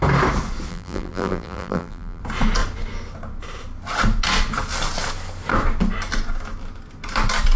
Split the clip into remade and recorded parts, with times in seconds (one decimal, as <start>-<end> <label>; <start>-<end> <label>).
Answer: 0.0-0.7 recorded; 0.7-2.2 remade; 2.2-7.6 recorded